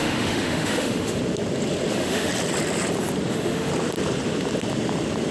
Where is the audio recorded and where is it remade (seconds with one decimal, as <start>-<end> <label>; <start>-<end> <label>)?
0.0-1.2 remade; 1.2-1.9 recorded; 1.9-2.3 remade; 2.3-3.3 recorded; 3.3-3.7 remade; 3.7-5.3 recorded